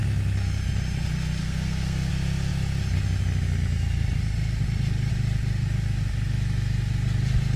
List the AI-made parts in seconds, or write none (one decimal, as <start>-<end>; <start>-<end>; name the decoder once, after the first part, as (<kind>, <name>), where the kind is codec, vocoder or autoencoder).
1.4-2.1 (codec, SNAC)